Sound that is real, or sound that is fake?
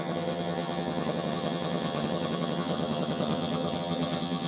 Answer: fake